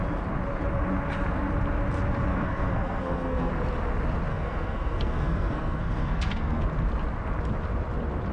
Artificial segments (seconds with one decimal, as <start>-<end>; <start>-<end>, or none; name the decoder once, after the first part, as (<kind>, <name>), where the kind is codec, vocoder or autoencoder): 2.3-3.5 (codec, SNAC); 4.3-6.6